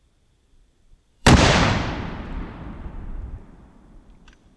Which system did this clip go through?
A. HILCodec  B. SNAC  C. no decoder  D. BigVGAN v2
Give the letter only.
D